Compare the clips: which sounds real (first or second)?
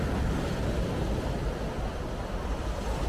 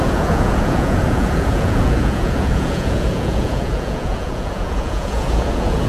first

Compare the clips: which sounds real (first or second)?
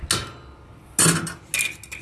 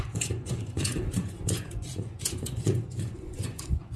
first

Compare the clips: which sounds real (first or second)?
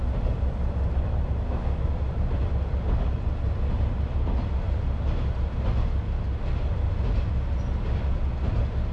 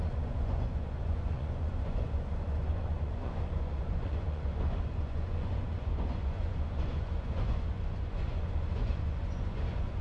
first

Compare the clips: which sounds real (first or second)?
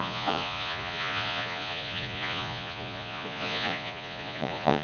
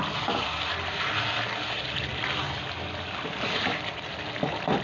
second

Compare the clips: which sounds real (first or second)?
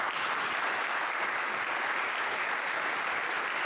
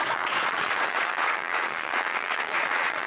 first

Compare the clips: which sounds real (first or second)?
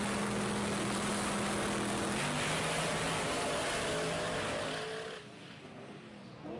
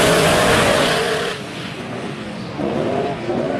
first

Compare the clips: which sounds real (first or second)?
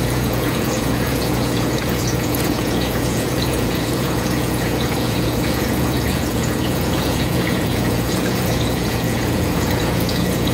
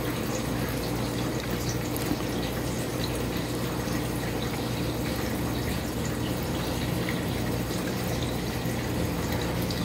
second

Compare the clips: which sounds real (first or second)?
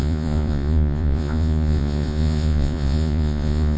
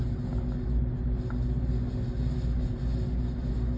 second